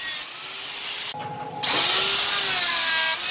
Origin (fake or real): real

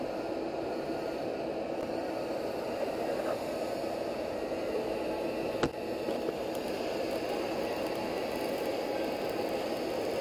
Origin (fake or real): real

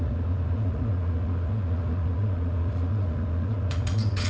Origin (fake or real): fake